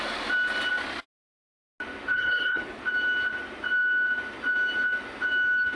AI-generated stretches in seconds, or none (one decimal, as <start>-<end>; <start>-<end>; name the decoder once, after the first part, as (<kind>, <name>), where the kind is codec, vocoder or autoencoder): 2.1-2.8 (codec, HILCodec)